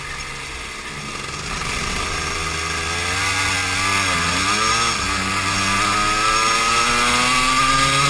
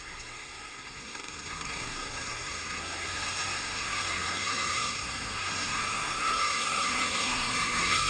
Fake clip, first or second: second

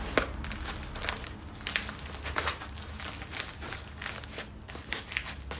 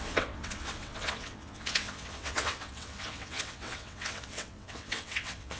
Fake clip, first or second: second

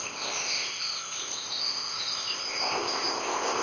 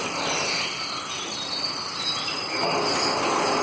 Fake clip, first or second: first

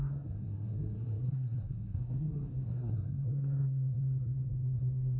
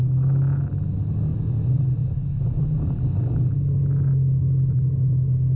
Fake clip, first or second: first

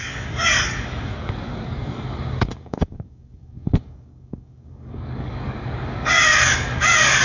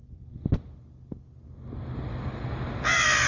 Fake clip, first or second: first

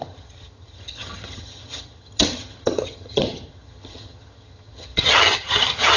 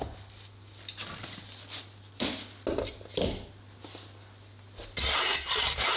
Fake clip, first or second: first